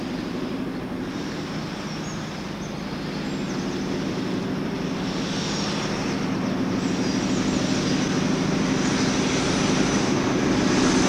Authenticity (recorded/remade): recorded